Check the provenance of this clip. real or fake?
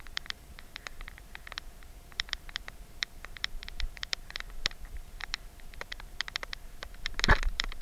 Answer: fake